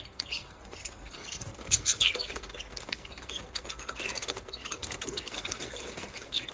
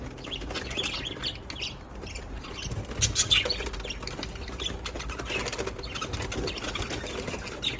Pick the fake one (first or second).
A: first